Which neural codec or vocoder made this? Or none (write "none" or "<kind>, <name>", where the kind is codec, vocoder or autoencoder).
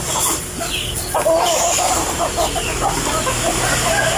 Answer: none